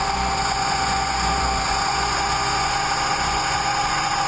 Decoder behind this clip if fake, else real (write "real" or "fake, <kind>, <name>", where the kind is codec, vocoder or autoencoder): fake, vocoder, Vocos